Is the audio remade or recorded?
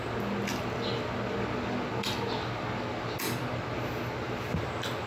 recorded